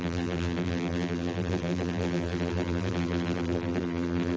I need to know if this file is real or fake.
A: fake